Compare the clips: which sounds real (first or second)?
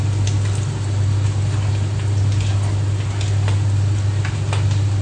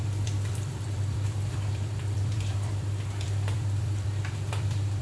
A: first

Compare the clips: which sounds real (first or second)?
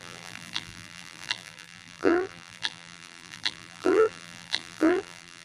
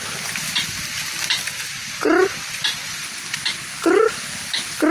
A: second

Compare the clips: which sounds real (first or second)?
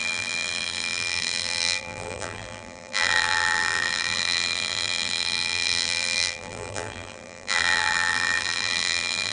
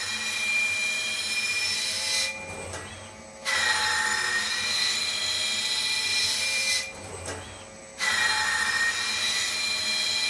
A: second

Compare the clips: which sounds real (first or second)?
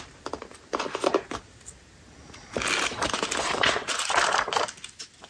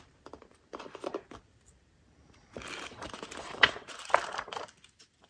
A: first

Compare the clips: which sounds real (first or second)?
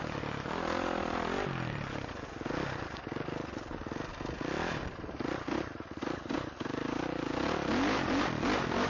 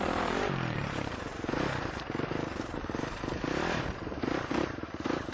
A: first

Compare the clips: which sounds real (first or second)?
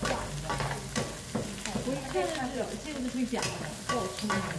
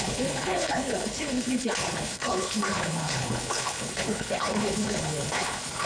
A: first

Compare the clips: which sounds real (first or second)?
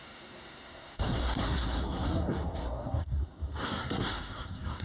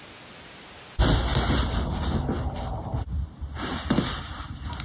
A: second